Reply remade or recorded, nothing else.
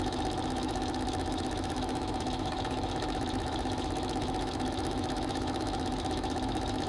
remade